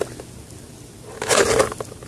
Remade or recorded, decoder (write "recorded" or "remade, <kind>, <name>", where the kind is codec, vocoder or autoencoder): recorded